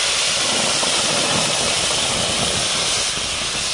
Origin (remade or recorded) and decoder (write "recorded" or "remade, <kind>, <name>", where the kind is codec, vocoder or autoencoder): recorded